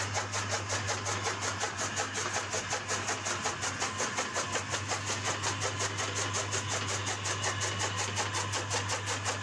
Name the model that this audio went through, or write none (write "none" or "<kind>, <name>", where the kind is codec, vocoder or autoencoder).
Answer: none